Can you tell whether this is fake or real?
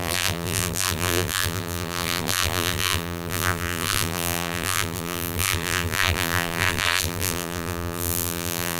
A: fake